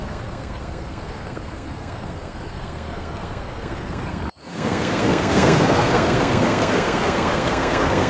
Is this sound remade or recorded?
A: remade